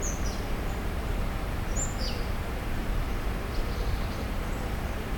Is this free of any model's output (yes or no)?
no